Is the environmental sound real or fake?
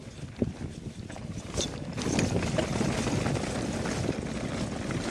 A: real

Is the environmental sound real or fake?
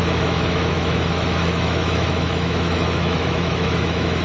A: fake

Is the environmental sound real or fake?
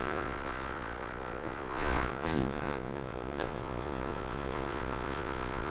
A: fake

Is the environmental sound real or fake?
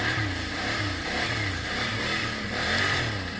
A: real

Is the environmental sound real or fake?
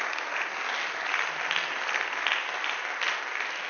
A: real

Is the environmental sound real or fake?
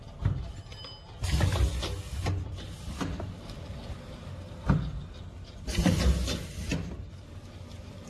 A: real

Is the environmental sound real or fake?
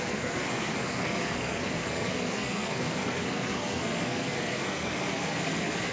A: fake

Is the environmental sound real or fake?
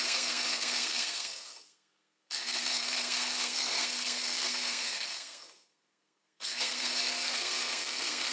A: fake